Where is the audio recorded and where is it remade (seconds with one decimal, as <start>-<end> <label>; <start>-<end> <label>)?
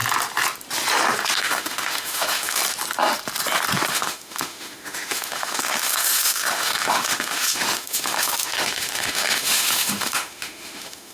0.0-1.4 recorded; 1.4-2.6 remade; 2.6-3.9 recorded; 3.9-11.1 remade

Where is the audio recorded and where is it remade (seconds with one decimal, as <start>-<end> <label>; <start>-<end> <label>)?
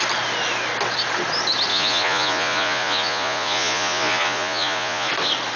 0.0-1.7 recorded; 1.7-5.1 remade; 5.1-5.6 recorded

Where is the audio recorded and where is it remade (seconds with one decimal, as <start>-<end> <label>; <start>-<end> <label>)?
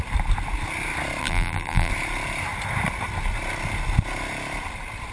0.0-1.2 recorded; 1.2-1.9 remade; 1.9-5.1 recorded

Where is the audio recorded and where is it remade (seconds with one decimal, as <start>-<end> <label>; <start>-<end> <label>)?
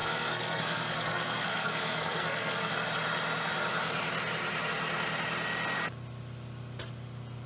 0.0-2.7 remade; 2.7-7.5 recorded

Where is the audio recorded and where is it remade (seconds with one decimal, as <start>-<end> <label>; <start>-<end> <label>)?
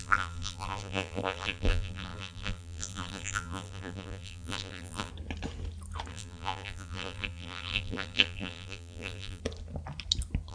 0.0-5.1 remade; 5.1-6.1 recorded; 6.1-9.4 remade; 9.4-10.5 recorded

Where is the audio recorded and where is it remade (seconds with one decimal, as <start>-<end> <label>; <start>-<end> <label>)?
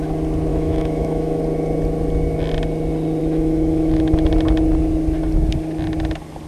0.0-0.5 recorded; 0.5-1.4 remade; 1.4-3.2 recorded; 3.2-4.3 remade; 4.3-6.5 recorded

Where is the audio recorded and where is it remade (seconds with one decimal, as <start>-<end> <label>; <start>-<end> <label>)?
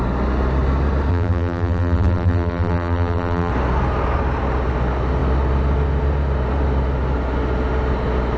0.0-1.1 recorded; 1.1-3.5 remade; 3.5-8.4 recorded